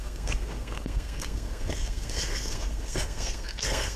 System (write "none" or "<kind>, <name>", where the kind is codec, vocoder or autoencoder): codec, SNAC